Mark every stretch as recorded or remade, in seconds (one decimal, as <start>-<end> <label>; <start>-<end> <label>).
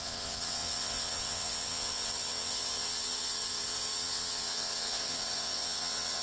0.0-6.2 remade